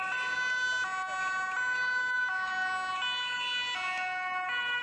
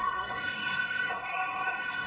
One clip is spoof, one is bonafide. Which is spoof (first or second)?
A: second